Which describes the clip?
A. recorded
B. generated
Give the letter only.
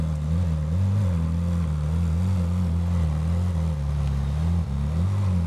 A